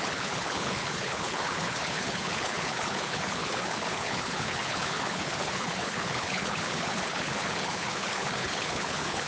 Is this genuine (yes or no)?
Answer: no